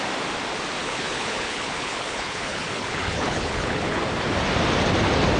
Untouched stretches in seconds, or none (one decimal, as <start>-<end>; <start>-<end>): 0.0-0.8; 4.0-5.4